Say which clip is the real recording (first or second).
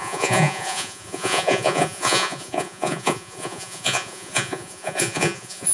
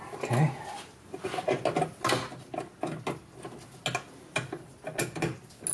second